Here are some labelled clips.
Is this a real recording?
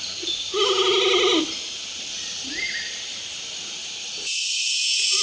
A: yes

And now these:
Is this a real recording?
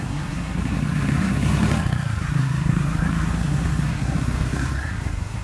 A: no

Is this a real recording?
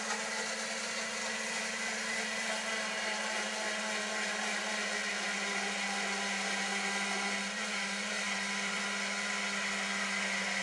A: yes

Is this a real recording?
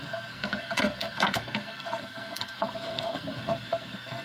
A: no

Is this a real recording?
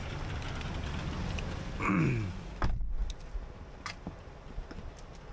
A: yes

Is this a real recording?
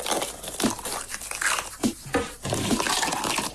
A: yes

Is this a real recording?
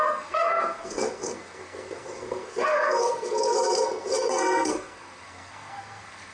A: no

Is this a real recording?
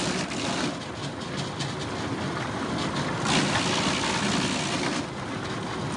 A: yes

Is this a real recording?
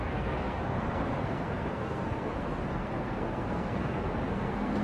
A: no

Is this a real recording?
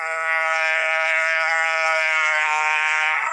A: no